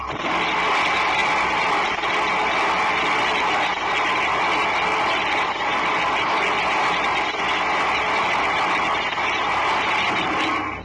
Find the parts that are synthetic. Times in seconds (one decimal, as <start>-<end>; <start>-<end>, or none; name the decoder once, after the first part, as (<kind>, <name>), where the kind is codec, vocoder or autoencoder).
none